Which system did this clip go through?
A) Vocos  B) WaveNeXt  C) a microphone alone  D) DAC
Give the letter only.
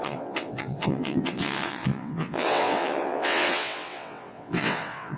B